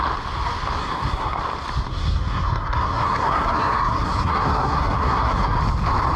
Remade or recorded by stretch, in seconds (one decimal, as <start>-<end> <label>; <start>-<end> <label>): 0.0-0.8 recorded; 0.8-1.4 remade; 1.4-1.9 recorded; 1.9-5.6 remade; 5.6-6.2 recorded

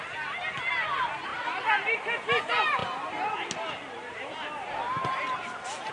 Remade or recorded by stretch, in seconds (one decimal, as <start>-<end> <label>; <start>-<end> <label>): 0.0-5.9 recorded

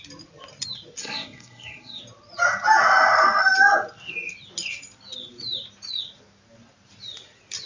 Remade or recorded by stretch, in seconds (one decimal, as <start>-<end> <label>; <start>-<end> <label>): 0.0-1.0 recorded; 1.0-2.0 remade; 2.0-7.7 recorded